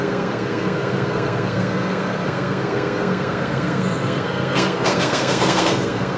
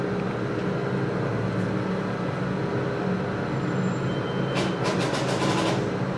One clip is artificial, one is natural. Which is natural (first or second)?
second